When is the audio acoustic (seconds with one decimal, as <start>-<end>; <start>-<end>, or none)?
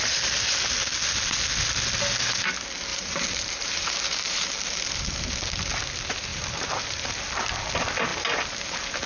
0.0-2.9; 5.5-6.3; 7.3-8.1